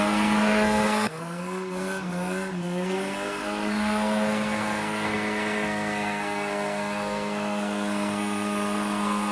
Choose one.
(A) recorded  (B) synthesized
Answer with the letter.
B